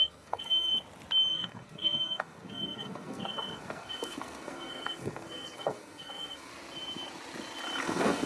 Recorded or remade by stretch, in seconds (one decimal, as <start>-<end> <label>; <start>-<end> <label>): 0.0-0.7 remade; 0.7-1.3 recorded; 1.3-6.5 remade; 6.5-7.8 recorded; 7.8-8.3 remade